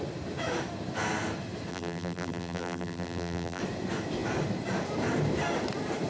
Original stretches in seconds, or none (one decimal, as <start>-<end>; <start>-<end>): 0.0-1.7; 3.6-6.1